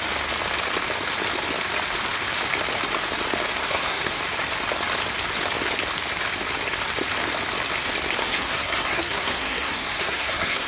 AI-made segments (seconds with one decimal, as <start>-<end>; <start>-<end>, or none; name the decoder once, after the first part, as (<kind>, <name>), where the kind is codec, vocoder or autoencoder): 3.6-4.2 (codec, SNAC); 8.2-10.7